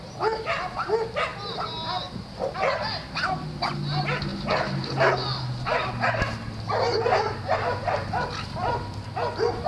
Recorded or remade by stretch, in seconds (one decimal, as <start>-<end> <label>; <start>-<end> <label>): 0.0-9.7 recorded